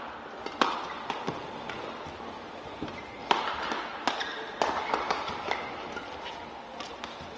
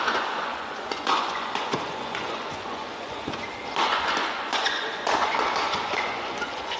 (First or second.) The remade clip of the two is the second